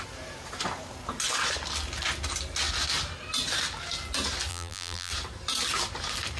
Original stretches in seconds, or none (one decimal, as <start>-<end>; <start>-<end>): 0.0-4.5; 5.1-6.4